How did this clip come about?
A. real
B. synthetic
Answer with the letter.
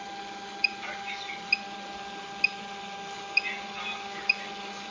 A